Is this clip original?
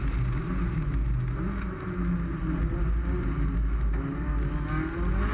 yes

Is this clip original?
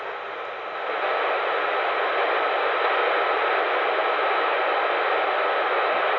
yes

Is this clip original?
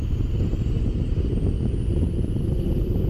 yes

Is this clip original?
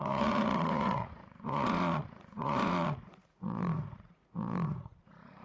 no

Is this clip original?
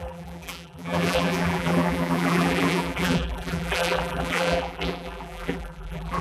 no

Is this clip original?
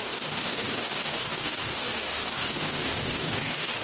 no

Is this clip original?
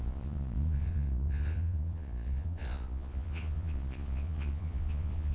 no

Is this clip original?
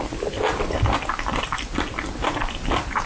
yes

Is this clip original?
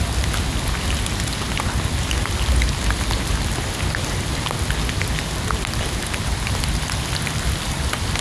yes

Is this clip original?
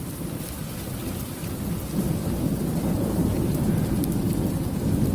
yes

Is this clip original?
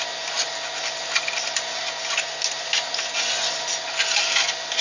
yes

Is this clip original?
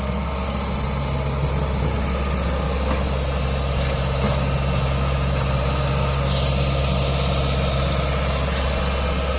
yes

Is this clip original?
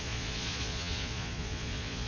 no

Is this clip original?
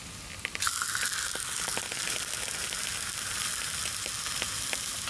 yes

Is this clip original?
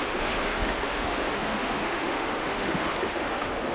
no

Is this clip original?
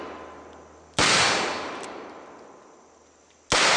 yes